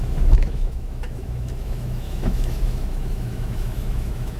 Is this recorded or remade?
remade